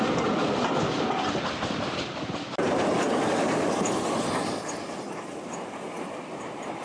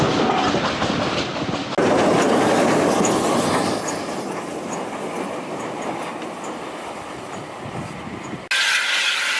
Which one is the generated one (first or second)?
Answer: first